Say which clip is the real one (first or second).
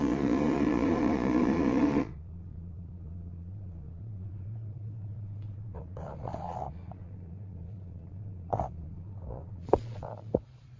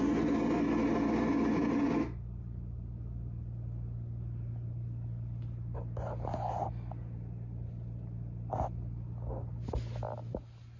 second